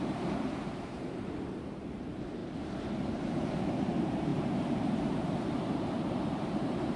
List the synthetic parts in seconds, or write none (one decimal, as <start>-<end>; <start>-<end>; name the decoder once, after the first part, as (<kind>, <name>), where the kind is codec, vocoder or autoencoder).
0.0-7.0 (vocoder, BigVGAN v2)